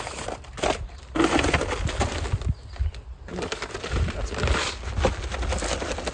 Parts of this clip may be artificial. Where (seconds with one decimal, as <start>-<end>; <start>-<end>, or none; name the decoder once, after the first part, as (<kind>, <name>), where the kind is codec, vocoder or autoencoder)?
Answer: none